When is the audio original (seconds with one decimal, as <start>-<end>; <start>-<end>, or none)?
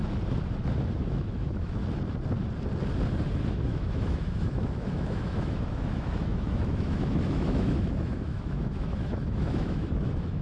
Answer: 0.0-1.0; 1.8-3.5